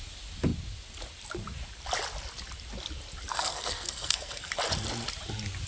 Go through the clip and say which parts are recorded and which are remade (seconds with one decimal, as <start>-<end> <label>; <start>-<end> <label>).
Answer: 0.0-3.3 recorded; 3.3-4.5 remade; 4.5-5.7 recorded